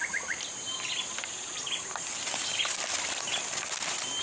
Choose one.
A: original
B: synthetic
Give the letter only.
A